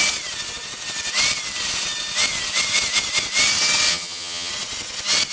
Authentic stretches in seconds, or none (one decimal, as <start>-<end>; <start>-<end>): 0.0-3.9; 4.5-5.3